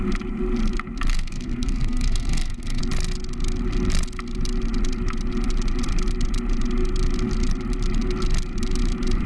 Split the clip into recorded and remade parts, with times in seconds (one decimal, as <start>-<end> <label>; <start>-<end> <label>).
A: 0.0-1.1 recorded; 1.1-2.8 remade; 2.8-9.3 recorded